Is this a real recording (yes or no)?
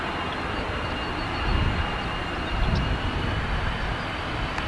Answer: yes